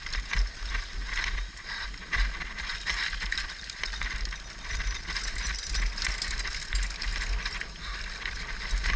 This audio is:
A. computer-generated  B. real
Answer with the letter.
B